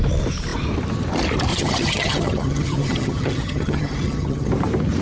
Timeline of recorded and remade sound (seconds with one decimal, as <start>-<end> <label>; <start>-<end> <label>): 0.0-1.5 recorded; 1.5-4.5 remade; 4.5-5.0 recorded

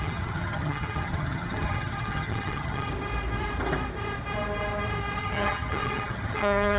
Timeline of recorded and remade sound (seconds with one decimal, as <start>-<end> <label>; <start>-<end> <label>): 0.0-2.9 remade; 2.9-5.2 recorded; 5.2-6.8 remade

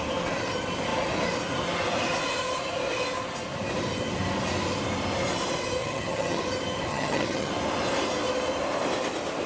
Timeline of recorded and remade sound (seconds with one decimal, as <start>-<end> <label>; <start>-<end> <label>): 0.0-5.8 recorded; 5.8-6.4 remade; 6.4-6.9 recorded; 6.9-7.5 remade; 7.5-9.5 recorded

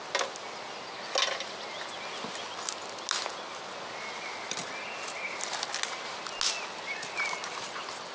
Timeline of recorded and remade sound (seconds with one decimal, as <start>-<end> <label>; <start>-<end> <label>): 0.0-8.1 recorded